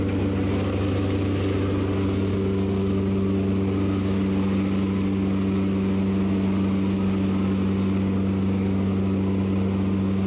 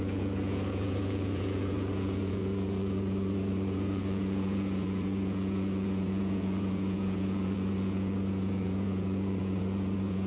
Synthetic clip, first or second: second